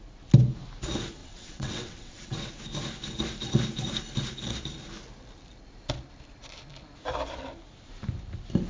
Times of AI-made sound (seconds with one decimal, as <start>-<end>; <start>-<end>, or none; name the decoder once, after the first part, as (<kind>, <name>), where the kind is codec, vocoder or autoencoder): 1.2-2.5 (vocoder, WaveNeXt)